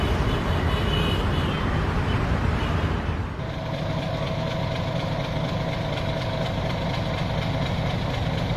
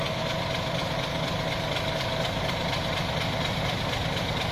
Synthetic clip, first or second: second